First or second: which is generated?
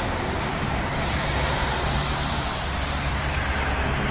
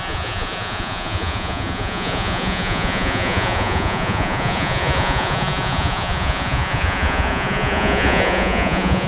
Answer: second